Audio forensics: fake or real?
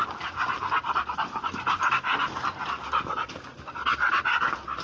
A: real